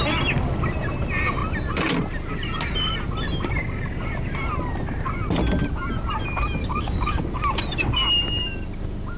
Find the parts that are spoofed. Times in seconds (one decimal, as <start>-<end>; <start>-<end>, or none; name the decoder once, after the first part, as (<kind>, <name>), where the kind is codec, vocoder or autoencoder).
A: 6.6-7.2 (codec, DAC)

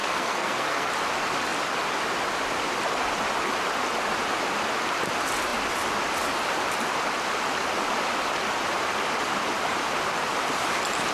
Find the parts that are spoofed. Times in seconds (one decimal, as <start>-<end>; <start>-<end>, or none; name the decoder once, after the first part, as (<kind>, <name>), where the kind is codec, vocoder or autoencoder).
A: 0.0-0.9 (codec, SNAC)